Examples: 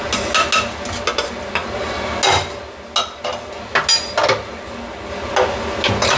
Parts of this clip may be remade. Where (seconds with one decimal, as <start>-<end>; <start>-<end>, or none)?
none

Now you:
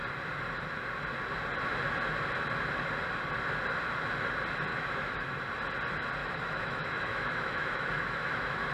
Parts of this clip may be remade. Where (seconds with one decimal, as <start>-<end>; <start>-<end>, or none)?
4.7-5.4; 6.2-8.7

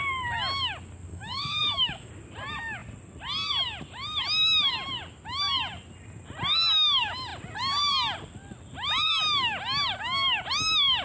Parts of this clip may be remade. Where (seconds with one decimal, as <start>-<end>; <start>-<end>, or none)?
1.1-2.1

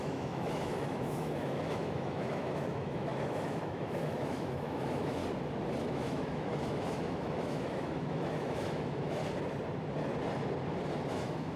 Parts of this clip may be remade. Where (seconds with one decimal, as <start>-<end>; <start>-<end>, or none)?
0.0-5.2; 5.8-9.2; 11.1-11.6

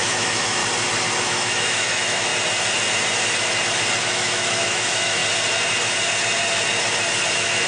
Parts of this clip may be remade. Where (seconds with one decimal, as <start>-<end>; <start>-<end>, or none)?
0.0-0.6; 1.2-2.3; 4.0-5.2; 7.3-7.7